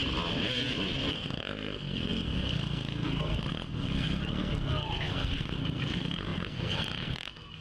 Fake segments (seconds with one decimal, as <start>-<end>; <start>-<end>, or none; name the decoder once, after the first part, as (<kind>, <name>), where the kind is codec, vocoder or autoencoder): 1.1-7.6 (codec, SNAC)

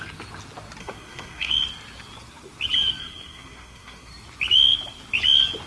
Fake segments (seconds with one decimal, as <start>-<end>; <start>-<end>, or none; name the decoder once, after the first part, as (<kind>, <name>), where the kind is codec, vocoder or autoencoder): 0.8-1.5 (codec, SNAC); 3.0-4.1